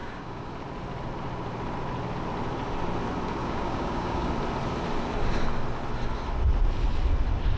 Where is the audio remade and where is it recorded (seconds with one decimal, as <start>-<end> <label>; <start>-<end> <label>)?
0.0-0.5 remade; 0.5-3.4 recorded; 3.4-4.3 remade; 4.3-7.6 recorded